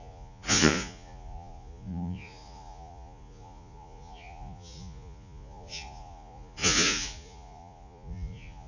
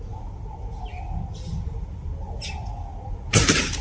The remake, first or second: first